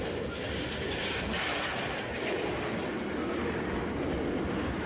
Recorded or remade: recorded